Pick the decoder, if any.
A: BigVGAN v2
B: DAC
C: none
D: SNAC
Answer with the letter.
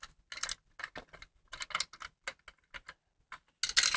C